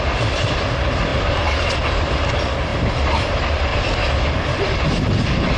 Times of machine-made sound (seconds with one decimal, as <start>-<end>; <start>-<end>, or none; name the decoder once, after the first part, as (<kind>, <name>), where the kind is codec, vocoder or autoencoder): 0.0-1.1 (vocoder, BigVGAN v2); 1.7-2.7; 3.3-3.7; 4.4-5.6